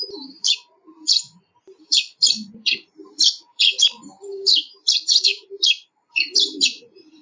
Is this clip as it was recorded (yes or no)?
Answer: no